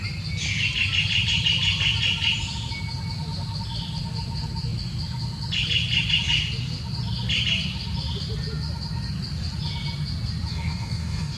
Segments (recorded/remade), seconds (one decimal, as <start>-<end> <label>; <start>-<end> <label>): 0.0-10.5 recorded; 10.5-11.4 remade